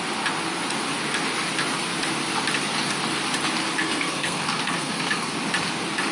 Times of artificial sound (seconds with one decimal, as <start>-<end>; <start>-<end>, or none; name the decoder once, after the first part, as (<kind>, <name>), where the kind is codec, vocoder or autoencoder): 3.8-5.3 (codec, SNAC)